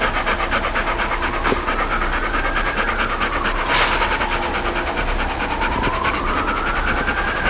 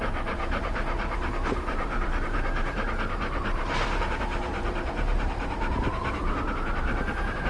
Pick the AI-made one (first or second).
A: second